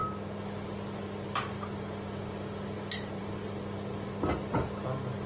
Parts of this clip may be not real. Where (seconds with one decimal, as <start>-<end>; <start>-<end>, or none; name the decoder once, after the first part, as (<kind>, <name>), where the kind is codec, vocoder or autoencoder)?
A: none

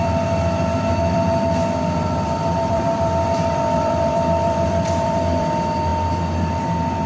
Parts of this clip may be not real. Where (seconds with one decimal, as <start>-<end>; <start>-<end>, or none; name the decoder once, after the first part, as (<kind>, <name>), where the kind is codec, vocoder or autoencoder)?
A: 0.0-5.9 (vocoder, BigVGAN v2)

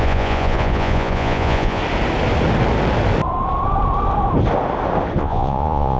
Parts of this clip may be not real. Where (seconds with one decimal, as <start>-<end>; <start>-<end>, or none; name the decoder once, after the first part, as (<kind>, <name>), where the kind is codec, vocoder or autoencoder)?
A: 0.0-1.8 (vocoder, Vocos); 5.2-6.0

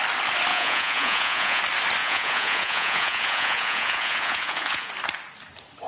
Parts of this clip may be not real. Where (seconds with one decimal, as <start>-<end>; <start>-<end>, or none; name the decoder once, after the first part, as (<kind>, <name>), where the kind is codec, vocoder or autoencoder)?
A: 0.5-1.6 (vocoder, Vocos); 2.0-4.9

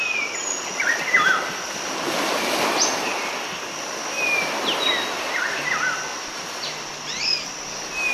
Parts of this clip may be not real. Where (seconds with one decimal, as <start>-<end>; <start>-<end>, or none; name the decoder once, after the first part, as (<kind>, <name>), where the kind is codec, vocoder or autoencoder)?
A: none

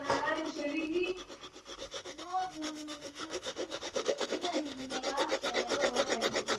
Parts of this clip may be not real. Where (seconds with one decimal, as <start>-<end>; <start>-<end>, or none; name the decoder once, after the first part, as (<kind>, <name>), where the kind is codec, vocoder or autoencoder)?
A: 1.8-4.9 (autoencoder, DAC-VAE)

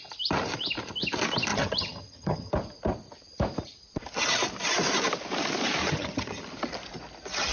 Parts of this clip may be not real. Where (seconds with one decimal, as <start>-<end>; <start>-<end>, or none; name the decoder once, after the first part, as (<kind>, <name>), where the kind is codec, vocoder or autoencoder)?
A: 1.5-2.5 (vocoder, HiFi-GAN); 5.8-6.4